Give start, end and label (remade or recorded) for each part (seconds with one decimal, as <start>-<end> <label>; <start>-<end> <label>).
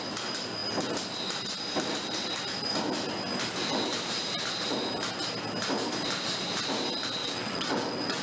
0.0-7.2 recorded; 7.2-8.2 remade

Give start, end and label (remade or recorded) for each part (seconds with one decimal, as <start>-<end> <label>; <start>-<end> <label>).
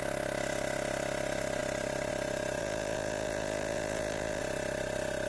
0.0-2.6 recorded; 2.6-4.4 remade; 4.4-5.3 recorded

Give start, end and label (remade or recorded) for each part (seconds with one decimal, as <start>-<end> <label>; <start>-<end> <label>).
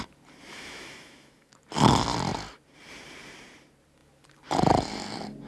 0.0-0.5 recorded; 0.5-1.5 remade; 1.5-5.5 recorded